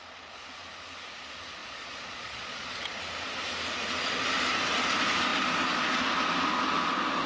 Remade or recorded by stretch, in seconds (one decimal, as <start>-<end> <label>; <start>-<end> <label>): 0.0-1.6 recorded; 1.6-3.0 remade; 3.0-7.3 recorded